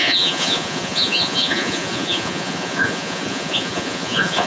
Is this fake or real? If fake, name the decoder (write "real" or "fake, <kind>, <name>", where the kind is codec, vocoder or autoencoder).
fake, vocoder, Vocos